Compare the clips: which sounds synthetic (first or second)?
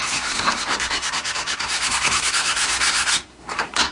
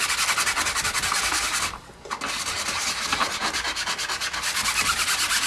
first